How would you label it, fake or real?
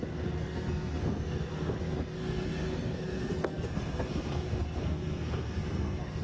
fake